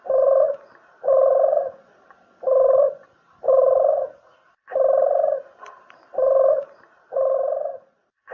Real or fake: fake